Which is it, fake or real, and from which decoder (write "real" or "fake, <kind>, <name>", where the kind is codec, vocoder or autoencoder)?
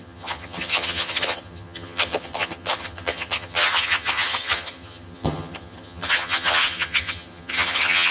fake, vocoder, HiFi-GAN